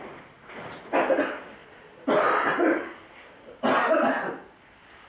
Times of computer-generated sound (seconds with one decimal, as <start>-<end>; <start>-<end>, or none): none